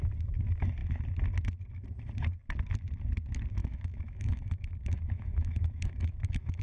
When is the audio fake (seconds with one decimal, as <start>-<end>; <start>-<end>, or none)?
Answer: 3.6-6.6